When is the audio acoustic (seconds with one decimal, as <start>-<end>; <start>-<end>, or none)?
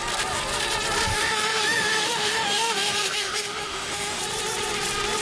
0.0-1.1; 4.2-5.2